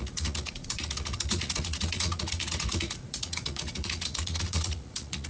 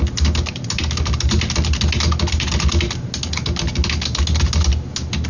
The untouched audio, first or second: second